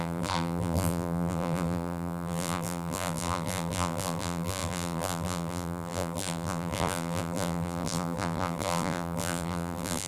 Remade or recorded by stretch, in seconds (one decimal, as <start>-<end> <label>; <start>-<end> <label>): 0.0-10.1 remade

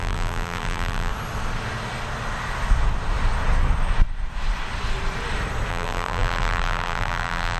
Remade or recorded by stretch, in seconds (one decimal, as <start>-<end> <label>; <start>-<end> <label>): 0.0-1.1 remade; 1.1-5.7 recorded; 5.7-7.6 remade

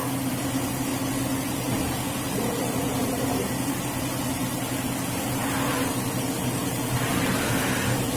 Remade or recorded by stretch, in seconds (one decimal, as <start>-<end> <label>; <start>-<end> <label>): 0.0-0.9 recorded; 0.9-3.7 remade; 3.7-5.4 recorded; 5.4-6.7 remade; 6.7-8.2 recorded

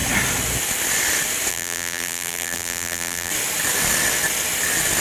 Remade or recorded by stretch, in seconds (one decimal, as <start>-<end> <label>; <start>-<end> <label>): 0.0-1.5 recorded; 1.5-3.3 remade; 3.3-5.0 recorded

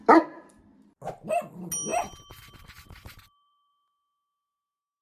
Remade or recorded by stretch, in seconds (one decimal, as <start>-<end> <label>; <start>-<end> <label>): 0.0-1.9 recorded; 1.9-3.7 remade; 3.7-5.0 recorded

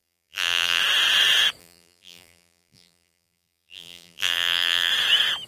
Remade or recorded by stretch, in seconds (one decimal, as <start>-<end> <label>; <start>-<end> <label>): 0.0-0.8 remade; 0.8-1.6 recorded; 1.6-4.9 remade; 4.9-5.5 recorded

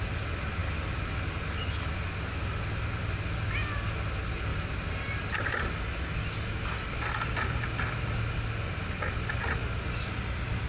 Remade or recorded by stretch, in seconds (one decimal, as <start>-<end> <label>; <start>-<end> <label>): 0.0-7.7 recorded; 7.7-8.2 remade; 8.2-10.7 recorded